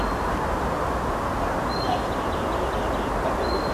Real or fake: real